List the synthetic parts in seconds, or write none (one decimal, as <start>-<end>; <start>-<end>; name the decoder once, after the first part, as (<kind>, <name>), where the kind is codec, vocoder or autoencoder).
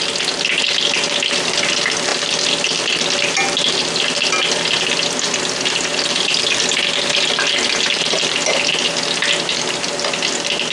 none